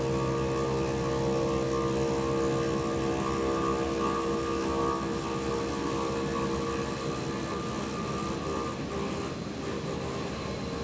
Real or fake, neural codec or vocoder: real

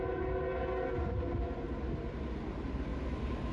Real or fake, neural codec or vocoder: real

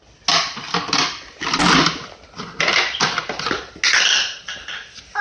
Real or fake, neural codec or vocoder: real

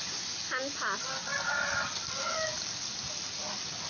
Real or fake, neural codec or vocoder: real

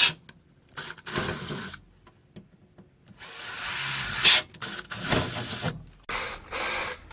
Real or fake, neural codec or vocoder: real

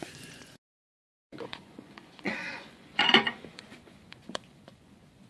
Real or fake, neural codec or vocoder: fake, vocoder, Vocos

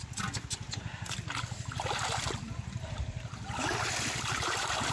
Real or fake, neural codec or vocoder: real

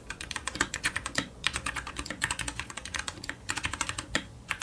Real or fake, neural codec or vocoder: fake, vocoder, Vocos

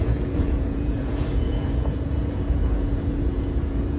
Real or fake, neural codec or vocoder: fake, vocoder, Vocos